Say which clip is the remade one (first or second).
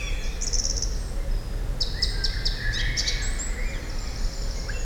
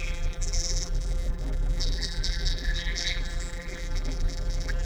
second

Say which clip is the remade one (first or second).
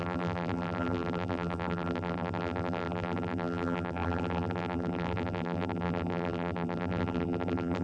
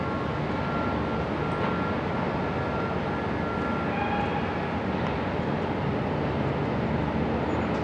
first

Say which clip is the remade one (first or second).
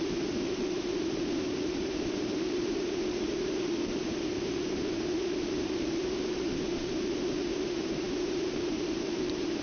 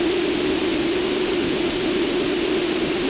first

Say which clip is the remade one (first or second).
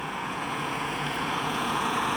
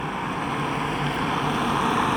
first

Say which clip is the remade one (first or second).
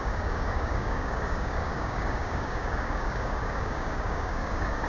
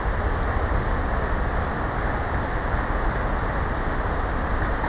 first